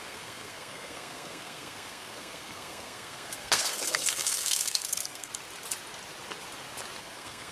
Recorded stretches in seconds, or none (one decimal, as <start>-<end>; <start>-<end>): 5.3-7.0